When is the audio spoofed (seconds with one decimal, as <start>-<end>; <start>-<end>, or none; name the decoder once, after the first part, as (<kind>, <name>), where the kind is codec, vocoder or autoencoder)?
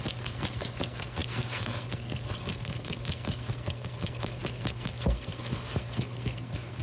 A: 0.0-6.8 (codec, SNAC)